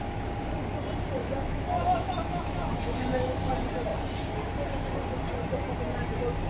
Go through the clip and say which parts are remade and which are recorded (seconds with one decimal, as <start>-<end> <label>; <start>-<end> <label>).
0.0-1.2 recorded; 1.2-3.5 remade; 3.5-6.5 recorded